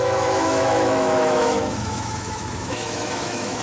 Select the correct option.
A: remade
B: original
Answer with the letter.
A